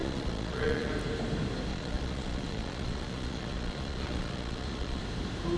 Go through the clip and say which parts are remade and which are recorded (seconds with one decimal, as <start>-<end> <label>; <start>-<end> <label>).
0.0-0.9 remade; 0.9-1.7 recorded; 1.7-5.0 remade; 5.0-5.6 recorded